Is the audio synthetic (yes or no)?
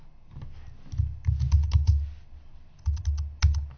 no